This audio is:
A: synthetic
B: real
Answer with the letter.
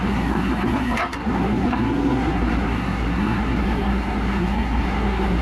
A